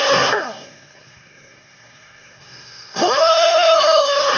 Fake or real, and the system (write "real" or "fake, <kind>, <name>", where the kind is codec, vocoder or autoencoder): fake, codec, SNAC